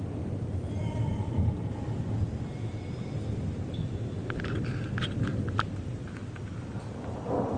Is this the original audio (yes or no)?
yes